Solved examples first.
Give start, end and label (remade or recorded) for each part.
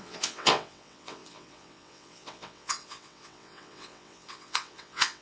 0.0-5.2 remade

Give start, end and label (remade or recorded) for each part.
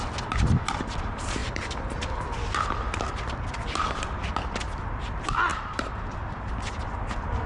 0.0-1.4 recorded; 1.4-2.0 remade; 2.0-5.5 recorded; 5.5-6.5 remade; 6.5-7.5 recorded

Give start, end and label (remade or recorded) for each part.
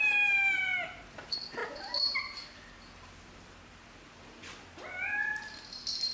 0.0-6.1 recorded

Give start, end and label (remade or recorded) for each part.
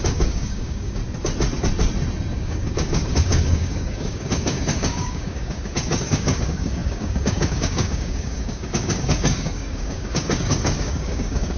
0.0-1.0 remade; 1.0-2.3 recorded; 2.3-11.6 remade